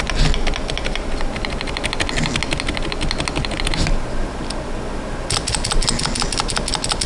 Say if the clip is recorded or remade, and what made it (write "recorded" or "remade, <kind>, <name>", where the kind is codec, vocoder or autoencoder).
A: recorded